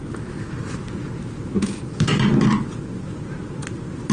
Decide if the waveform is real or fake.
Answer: real